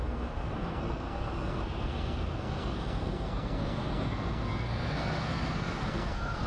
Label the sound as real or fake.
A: fake